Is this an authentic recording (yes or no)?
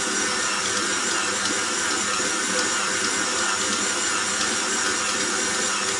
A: yes